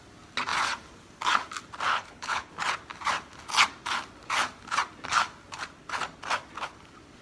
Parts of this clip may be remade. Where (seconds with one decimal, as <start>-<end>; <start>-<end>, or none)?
1.9-2.5